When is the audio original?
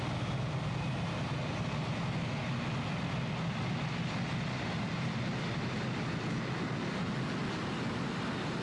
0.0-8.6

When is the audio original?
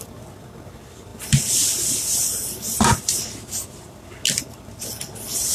0.0-5.5